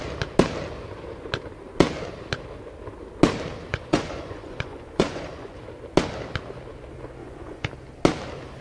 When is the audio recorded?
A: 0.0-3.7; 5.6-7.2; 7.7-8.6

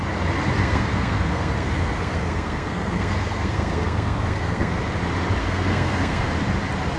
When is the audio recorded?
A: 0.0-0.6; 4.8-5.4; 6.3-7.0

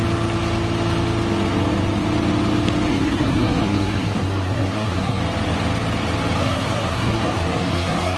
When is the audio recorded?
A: 0.0-2.9; 5.2-6.4